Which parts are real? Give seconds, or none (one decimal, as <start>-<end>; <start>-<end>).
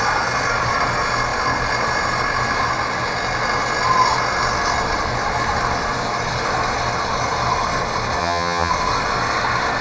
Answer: 0.0-8.2; 8.7-9.8